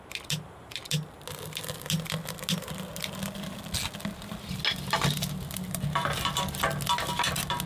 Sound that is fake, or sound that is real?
real